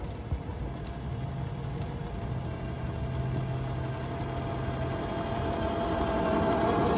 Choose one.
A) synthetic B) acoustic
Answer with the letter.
B